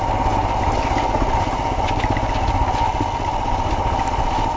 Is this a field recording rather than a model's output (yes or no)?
yes